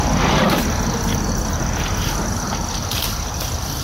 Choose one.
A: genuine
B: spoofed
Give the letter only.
A